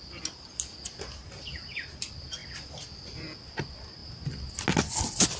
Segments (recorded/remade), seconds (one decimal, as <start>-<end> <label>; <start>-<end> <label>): 0.0-5.4 recorded